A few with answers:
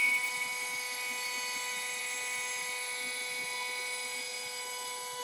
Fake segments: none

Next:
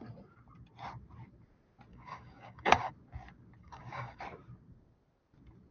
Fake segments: 1.9-2.9 (codec, DAC); 3.6-4.2

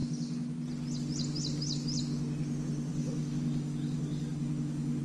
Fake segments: 2.9-5.0 (codec, DAC)

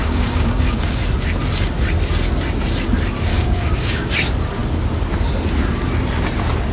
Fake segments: 0.0-1.0 (codec, DAC); 3.3-4.1

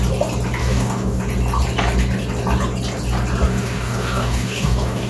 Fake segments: 0.6-1.2 (codec, DAC); 3.5-5.1

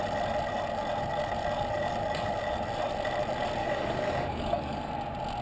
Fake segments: 3.6-4.9 (codec, DAC)

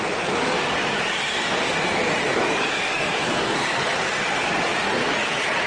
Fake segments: 2.3-4.2 (codec, DAC)

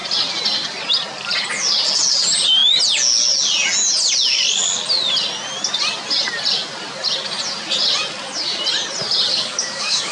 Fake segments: 9.3-10.1 (codec, DAC)